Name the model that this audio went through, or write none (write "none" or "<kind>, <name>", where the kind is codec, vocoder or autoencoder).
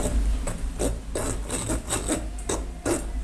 none